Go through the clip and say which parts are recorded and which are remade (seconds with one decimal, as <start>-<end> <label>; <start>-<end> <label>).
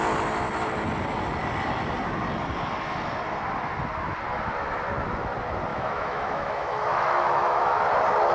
0.0-5.7 recorded; 5.7-7.8 remade; 7.8-8.3 recorded